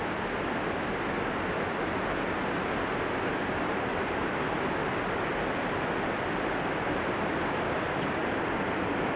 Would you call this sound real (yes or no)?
yes